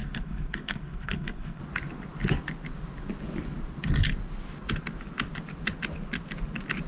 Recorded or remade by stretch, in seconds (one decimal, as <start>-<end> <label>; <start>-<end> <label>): 0.0-1.6 remade; 1.6-6.9 recorded